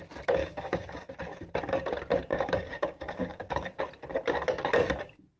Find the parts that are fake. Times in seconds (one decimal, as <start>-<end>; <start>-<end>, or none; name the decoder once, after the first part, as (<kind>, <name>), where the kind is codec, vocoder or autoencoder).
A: 0.4-1.1 (codec, DAC); 2.3-3.8